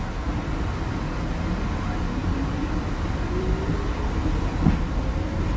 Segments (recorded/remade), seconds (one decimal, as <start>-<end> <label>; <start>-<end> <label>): 0.0-2.2 recorded; 2.2-3.6 remade; 3.6-5.6 recorded